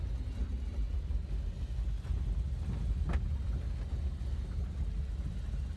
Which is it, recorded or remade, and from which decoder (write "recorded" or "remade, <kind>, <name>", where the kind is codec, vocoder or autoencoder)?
recorded